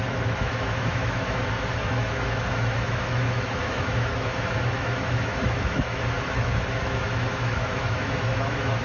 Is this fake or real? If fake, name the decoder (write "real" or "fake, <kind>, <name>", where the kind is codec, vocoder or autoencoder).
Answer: fake, autoencoder, DAC-VAE